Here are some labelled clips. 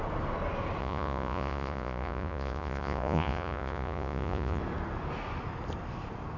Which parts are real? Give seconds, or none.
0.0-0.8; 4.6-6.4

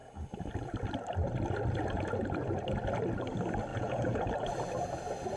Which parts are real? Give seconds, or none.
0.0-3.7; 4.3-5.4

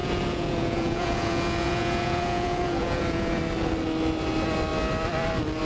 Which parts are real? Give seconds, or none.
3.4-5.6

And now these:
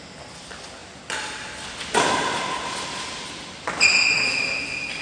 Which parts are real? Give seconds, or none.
0.0-5.0

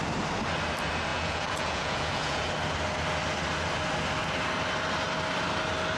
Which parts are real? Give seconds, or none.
0.0-1.1; 2.5-6.0

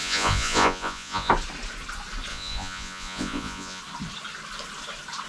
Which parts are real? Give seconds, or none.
1.3-2.3; 3.8-5.3

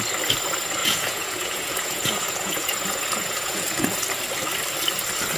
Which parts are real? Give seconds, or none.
0.0-0.8; 4.0-5.4

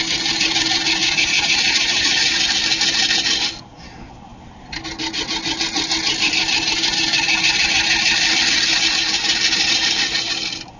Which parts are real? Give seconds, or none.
0.0-1.0; 2.4-10.8